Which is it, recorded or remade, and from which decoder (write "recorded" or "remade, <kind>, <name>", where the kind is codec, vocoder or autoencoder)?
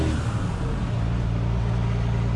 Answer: recorded